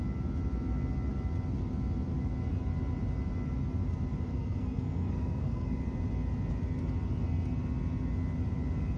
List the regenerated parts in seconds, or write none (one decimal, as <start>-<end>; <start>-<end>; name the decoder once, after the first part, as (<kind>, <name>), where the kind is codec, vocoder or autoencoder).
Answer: 4.3-5.8 (codec, SNAC)